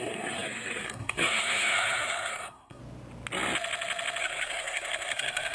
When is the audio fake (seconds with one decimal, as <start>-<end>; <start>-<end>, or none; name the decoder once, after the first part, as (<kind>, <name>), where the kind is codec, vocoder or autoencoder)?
0.0-2.8 (codec, SNAC); 4.2-5.5